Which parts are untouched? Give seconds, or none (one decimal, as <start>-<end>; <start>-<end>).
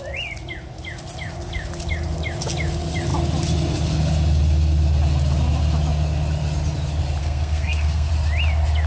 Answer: 0.0-7.2; 8.1-8.9